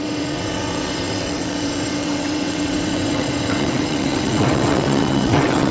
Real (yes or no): no